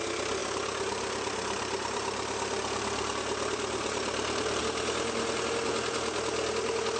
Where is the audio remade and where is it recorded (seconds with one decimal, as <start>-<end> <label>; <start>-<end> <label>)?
0.0-0.4 recorded; 0.4-4.6 remade; 4.6-7.0 recorded